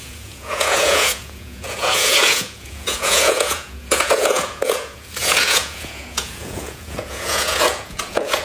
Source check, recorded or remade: remade